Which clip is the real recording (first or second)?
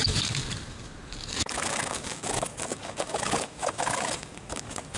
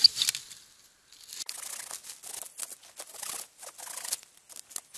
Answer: second